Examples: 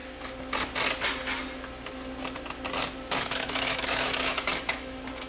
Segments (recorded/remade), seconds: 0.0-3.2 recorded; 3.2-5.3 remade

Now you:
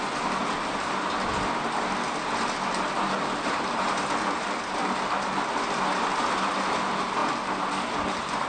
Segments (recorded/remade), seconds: 0.0-8.5 recorded

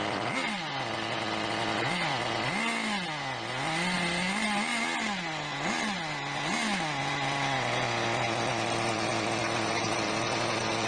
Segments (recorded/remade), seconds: 0.0-10.9 recorded

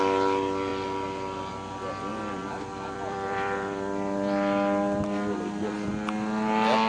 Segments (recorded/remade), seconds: 0.0-2.1 recorded; 2.1-5.9 remade; 5.9-6.9 recorded